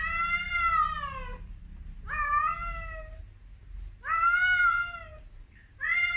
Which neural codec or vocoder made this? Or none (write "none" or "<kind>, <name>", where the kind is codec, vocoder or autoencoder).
none